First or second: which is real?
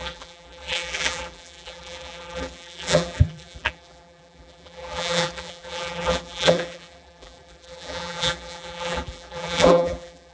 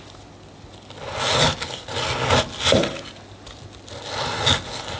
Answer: second